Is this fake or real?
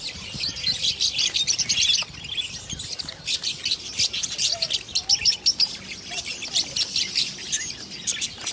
real